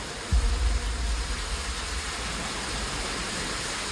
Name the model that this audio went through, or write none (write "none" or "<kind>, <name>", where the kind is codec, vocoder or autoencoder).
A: none